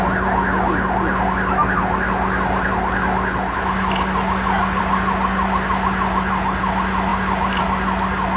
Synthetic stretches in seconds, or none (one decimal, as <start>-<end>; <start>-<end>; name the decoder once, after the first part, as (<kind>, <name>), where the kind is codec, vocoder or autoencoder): none